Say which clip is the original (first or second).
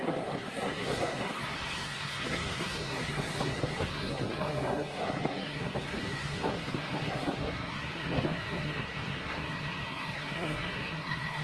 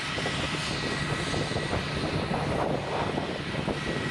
second